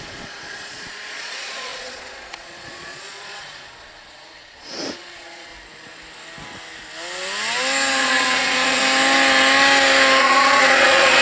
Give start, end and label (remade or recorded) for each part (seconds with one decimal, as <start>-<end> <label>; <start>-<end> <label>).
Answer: 0.0-5.5 remade; 5.5-8.0 recorded; 8.0-8.8 remade; 8.8-10.2 recorded; 10.2-11.2 remade